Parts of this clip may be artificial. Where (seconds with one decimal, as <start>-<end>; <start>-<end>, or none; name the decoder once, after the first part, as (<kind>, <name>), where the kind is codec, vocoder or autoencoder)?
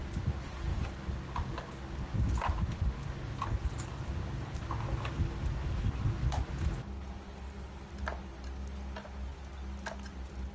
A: none